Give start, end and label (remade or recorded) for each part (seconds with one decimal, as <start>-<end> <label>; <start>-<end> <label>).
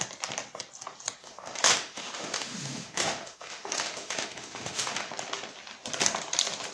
0.0-1.2 recorded; 1.2-5.1 remade; 5.1-6.7 recorded